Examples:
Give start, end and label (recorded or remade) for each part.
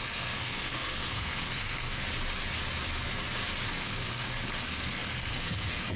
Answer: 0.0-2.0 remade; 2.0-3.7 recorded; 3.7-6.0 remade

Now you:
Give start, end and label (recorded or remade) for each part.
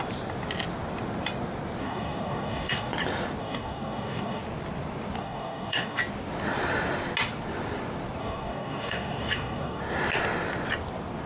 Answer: 0.0-1.8 recorded; 1.8-2.9 remade; 2.9-3.4 recorded; 3.4-4.4 remade; 4.4-5.2 recorded; 5.2-6.0 remade; 6.0-8.2 recorded; 8.2-9.8 remade; 9.8-11.3 recorded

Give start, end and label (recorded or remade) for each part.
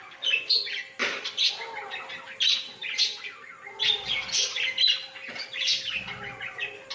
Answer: 0.0-6.9 recorded